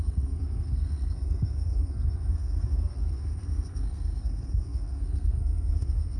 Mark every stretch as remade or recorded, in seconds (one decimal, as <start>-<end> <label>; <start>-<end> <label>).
0.0-6.2 remade